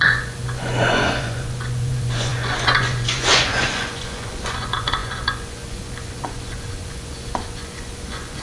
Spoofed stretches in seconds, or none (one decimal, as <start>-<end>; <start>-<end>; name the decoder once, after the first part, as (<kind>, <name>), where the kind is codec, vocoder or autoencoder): 0.0-8.4 (vocoder, Vocos)